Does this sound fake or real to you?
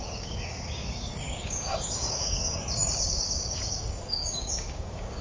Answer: fake